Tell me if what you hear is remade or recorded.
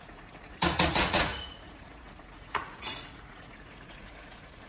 remade